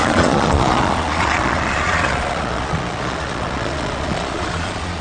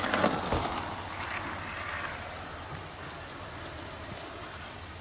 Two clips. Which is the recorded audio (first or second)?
second